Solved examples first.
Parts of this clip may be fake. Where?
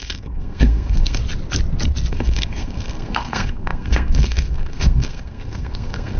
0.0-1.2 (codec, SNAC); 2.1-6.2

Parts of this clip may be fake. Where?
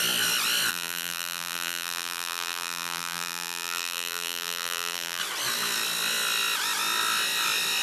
0.7-5.2 (vocoder, BigVGAN v2)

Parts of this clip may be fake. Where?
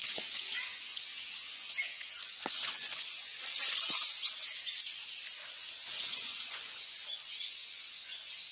0.0-3.3 (vocoder, Vocos); 5.5-8.5